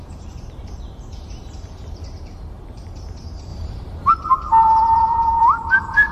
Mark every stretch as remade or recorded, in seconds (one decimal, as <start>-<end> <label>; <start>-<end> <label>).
0.0-6.1 remade